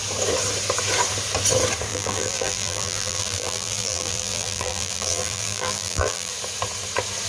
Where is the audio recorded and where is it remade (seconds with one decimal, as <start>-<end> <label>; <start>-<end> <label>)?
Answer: 0.0-1.9 recorded; 1.9-6.3 remade; 6.3-7.3 recorded